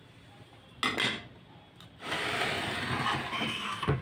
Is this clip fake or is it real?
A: real